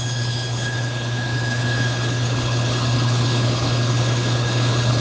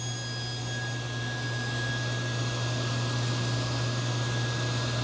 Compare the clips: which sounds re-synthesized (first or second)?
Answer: first